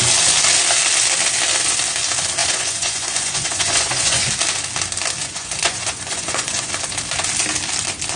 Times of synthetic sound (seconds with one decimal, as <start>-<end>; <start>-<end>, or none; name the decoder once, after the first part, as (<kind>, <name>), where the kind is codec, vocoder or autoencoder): 2.4-4.3 (vocoder, Vocos); 5.2-6.7